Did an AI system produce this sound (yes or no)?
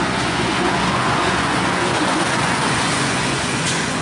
yes